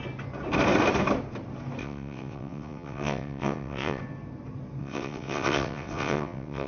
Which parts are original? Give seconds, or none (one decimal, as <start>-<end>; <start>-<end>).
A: 0.0-1.8; 4.0-4.8